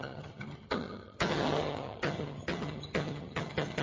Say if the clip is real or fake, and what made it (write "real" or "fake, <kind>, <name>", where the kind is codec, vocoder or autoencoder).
fake, vocoder, HiFi-GAN